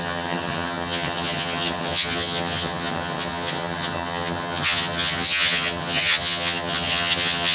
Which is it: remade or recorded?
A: remade